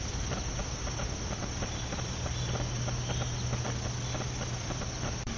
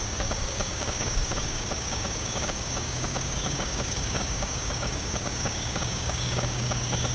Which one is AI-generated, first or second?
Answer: second